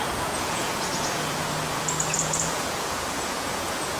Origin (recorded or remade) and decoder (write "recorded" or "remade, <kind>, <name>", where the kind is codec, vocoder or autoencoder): remade, vocoder, Vocos